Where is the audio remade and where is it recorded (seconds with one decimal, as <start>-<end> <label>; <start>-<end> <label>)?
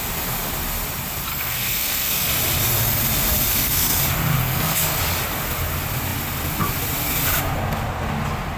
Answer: 0.0-1.3 recorded; 1.3-2.3 remade; 2.3-3.5 recorded; 3.5-4.0 remade; 4.0-4.4 recorded; 4.4-5.0 remade; 5.0-8.6 recorded